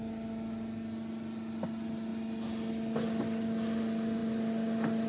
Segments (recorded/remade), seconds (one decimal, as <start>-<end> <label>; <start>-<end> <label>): 0.0-5.1 recorded